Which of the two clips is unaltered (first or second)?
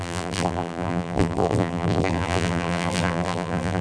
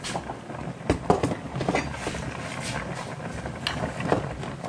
second